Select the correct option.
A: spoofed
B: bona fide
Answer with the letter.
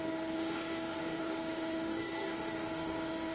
A